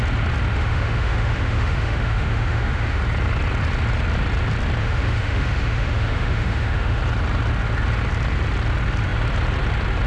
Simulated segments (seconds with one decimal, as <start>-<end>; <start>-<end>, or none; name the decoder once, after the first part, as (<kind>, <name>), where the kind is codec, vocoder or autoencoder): 0.5-3.0 (autoencoder, DAC-VAE); 4.8-7.0